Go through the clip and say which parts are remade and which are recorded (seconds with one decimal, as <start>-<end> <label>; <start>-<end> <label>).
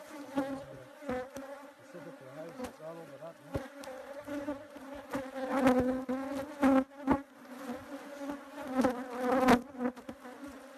0.0-10.8 recorded